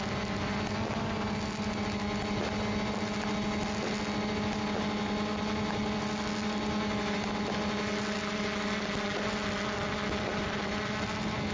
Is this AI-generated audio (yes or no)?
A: no